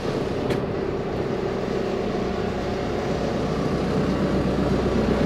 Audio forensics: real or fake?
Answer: real